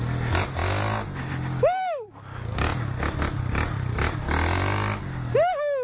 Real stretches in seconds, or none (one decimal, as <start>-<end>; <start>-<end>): 0.0-5.8